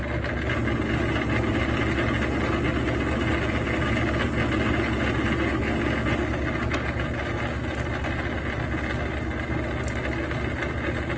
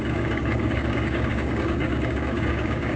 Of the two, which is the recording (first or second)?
first